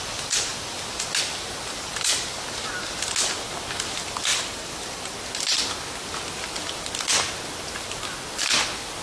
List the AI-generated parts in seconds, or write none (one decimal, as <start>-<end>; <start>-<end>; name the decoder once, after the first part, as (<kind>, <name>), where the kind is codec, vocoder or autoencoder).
none